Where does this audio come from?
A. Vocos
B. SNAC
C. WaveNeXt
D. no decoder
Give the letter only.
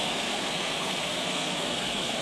B